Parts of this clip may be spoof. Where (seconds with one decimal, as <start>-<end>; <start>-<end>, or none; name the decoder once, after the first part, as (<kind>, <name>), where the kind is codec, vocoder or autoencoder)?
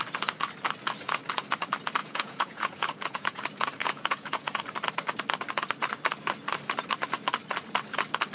2.0-3.4 (vocoder, Vocos); 3.8-4.5